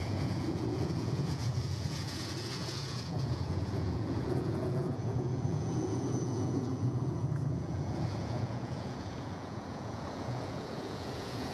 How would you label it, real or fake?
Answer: fake